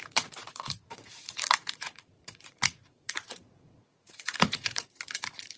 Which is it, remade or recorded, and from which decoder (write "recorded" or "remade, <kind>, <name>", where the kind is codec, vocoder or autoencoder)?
remade, vocoder, Vocos